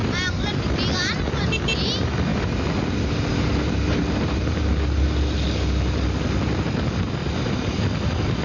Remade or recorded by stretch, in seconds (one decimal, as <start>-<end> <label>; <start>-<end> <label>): 0.0-0.6 remade; 0.6-2.3 recorded; 2.3-4.6 remade; 4.6-7.2 recorded; 7.2-7.8 remade; 7.8-8.4 recorded